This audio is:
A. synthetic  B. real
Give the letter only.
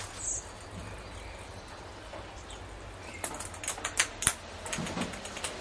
B